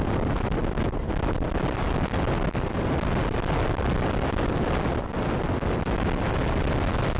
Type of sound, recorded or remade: recorded